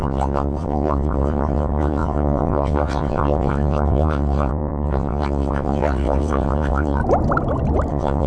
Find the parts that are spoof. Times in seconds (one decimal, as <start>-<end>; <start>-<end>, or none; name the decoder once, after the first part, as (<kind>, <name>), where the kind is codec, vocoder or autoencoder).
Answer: 0.0-7.0 (vocoder, WaveNeXt); 7.9-8.3